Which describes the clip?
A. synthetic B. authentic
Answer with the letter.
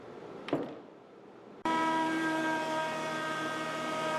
A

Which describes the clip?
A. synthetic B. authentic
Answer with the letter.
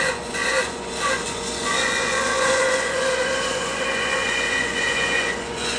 A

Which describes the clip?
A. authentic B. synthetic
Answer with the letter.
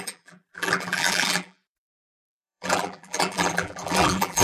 B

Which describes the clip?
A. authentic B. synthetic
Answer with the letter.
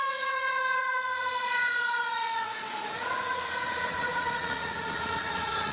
B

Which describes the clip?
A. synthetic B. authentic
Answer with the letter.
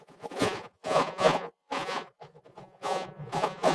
A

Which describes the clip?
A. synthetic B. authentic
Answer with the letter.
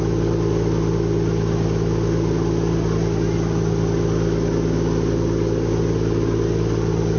B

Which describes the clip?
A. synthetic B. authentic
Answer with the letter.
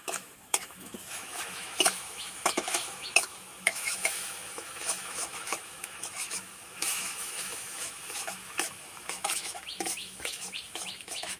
A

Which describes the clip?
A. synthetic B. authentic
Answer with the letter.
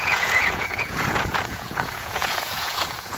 A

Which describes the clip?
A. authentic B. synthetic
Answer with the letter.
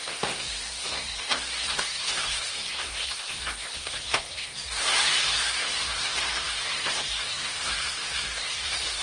B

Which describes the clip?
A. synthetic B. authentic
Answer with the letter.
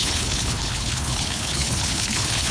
A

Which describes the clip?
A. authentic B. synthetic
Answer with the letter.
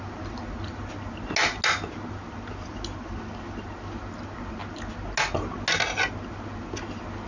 A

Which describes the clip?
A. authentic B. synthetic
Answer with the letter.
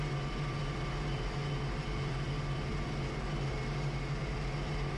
A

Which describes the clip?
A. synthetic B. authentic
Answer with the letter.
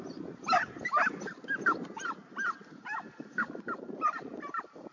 B